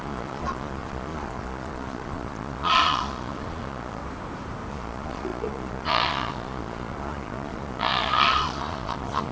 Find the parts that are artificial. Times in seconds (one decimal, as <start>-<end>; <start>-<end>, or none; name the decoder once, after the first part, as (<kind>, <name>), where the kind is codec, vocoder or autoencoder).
0.0-4.0 (vocoder, Vocos); 4.7-9.3

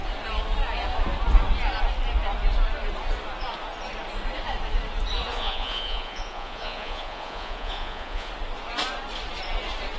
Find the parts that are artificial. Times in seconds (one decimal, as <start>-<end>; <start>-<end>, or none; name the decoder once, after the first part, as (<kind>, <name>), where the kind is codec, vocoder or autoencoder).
5.3-8.3 (vocoder, Vocos)

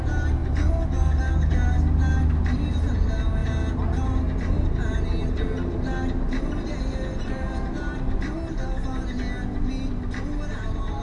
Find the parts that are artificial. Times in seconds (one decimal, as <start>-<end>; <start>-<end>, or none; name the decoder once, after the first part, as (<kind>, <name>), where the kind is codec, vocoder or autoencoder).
none

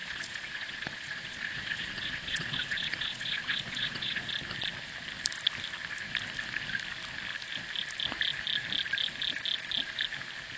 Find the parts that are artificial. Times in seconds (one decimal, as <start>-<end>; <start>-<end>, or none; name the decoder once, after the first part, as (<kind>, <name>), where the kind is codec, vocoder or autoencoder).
0.0-4.3 (vocoder, Vocos)

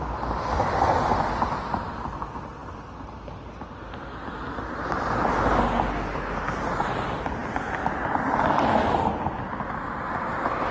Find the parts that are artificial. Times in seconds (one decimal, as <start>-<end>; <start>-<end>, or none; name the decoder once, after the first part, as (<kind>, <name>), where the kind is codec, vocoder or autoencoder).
none

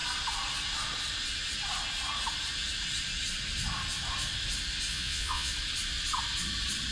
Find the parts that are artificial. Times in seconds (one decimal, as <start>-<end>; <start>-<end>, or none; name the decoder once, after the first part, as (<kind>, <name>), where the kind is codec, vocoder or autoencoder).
4.9-5.5 (vocoder, Vocos)

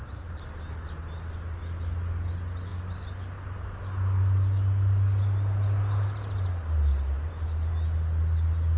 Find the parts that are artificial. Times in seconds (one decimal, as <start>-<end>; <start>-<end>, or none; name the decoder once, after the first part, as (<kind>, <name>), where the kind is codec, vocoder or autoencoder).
none